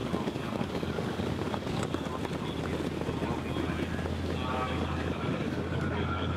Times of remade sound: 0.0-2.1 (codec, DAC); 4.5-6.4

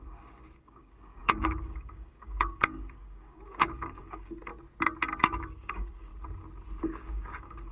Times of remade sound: 0.0-4.5 (codec, DAC); 5.2-6.1; 6.8-7.7

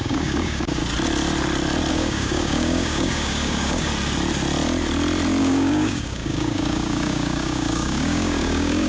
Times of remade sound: 0.0-0.8 (codec, DAC); 1.9-3.9; 5.4-8.9

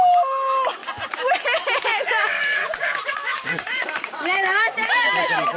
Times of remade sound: 0.0-0.8 (codec, DAC); 1.8-2.6; 3.1-4.7

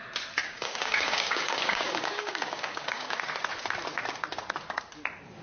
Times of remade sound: 0.4-3.2 (codec, DAC)

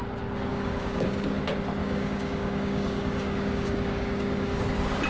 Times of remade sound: 0.5-1.4 (codec, DAC); 1.8-4.6

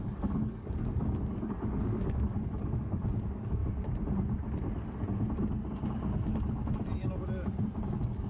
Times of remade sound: 0.0-3.6 (codec, DAC); 7.9-8.3

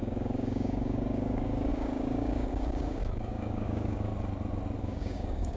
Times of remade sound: 0.0-4.1 (codec, DAC); 4.8-5.6